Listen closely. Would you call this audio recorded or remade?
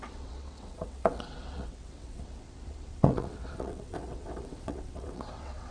remade